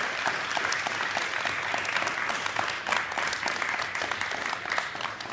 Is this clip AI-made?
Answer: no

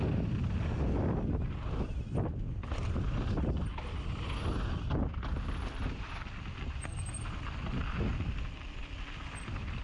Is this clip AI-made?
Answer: no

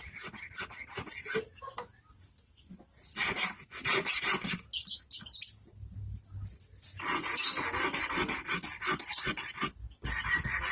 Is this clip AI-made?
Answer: no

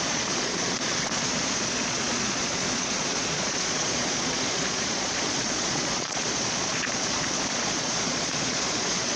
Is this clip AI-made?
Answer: yes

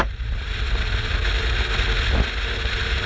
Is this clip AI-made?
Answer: no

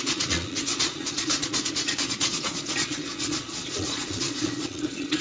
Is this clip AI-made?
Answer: yes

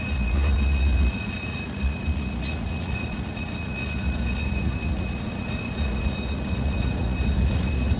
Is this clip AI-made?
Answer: yes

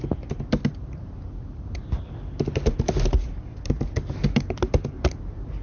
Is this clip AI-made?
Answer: no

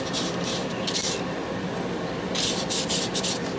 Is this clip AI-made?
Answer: no